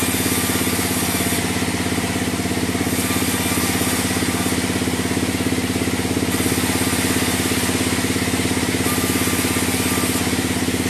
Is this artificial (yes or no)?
no